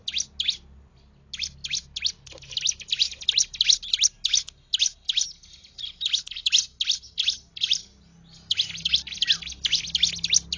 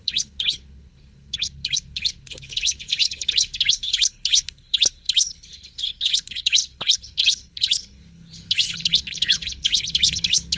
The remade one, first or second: second